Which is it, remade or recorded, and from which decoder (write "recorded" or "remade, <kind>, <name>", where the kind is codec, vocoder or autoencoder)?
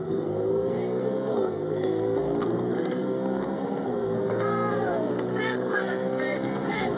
remade, codec, SNAC